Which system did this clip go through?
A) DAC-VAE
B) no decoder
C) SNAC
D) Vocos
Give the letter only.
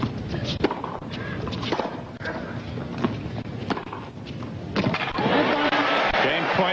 B